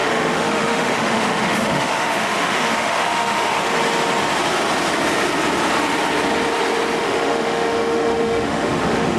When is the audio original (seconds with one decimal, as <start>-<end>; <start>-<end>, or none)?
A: 3.7-7.0